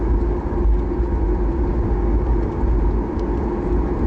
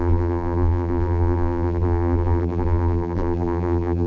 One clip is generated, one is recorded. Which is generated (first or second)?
second